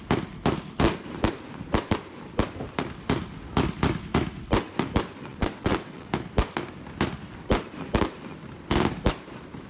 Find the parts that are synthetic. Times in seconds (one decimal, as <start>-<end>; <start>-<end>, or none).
5.3-6.1